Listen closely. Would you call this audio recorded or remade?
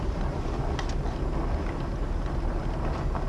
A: recorded